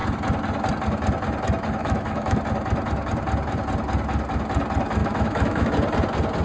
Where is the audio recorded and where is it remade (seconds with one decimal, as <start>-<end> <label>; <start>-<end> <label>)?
0.0-1.8 recorded; 1.8-2.4 remade; 2.4-5.0 recorded; 5.0-5.7 remade; 5.7-6.4 recorded